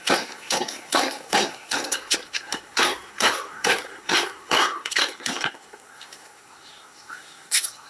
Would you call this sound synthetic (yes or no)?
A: yes